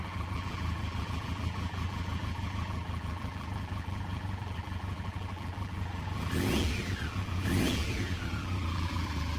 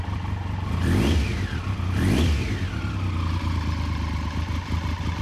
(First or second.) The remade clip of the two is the first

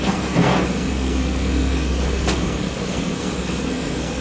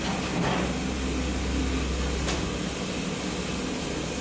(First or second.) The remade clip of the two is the first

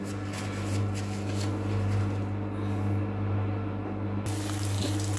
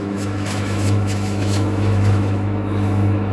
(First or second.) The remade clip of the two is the second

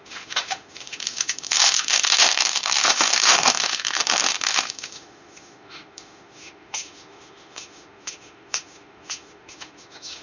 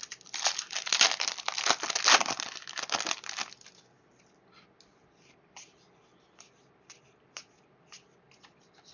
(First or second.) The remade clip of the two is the first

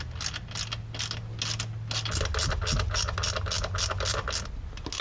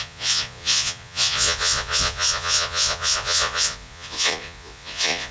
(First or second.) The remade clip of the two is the second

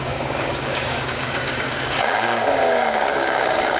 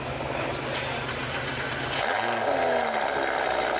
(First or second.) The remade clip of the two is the first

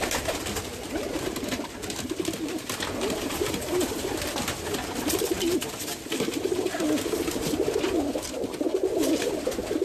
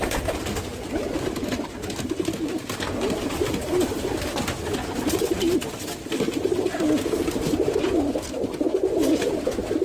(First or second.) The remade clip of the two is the first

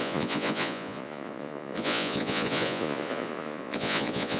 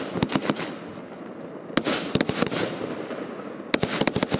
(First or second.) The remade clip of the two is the first